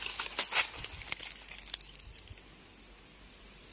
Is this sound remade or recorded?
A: recorded